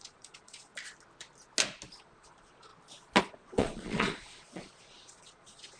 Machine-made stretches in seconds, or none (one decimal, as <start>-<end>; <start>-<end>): 0.0-0.7; 2.0-2.7; 3.2-5.8